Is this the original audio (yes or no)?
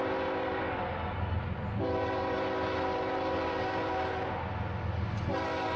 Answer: yes